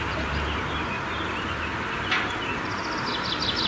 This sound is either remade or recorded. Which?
recorded